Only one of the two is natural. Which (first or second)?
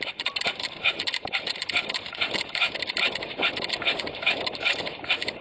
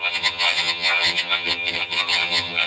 first